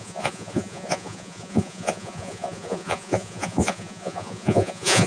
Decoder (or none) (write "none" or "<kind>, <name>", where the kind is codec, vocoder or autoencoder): vocoder, Vocos